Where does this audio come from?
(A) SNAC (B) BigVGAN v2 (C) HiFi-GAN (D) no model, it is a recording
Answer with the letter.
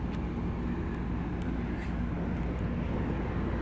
D